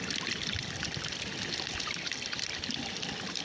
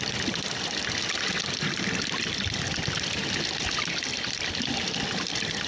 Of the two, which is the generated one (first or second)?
first